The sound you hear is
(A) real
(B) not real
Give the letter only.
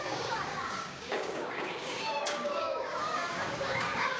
B